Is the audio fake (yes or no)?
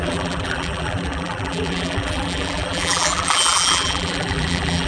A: yes